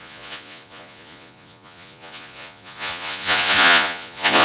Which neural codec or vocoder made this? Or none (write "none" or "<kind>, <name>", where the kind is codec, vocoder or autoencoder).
vocoder, Vocos